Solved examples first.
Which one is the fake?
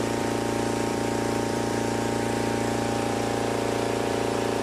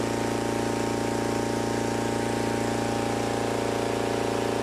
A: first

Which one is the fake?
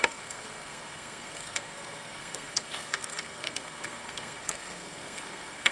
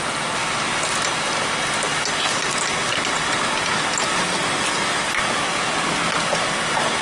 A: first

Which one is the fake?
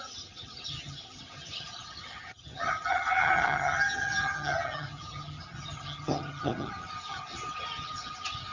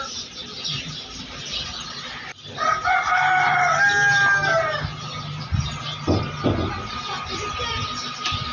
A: first